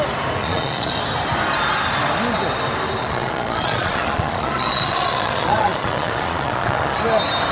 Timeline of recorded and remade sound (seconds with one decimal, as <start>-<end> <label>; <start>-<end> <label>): 0.0-0.4 recorded; 0.4-0.9 remade; 0.9-3.0 recorded; 3.0-7.0 remade; 7.0-7.5 recorded